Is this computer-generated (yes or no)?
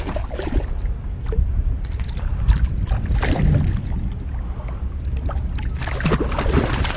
no